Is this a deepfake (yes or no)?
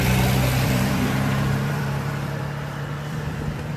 yes